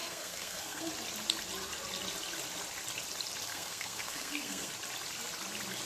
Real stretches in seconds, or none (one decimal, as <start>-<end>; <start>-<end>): 0.9-3.5; 4.7-5.9